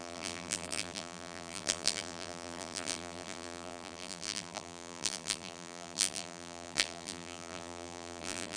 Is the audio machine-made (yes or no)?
yes